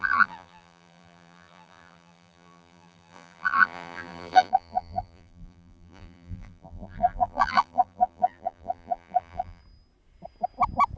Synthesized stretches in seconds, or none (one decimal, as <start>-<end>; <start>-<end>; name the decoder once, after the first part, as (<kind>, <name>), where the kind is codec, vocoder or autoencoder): 0.0-9.6 (vocoder, BigVGAN v2)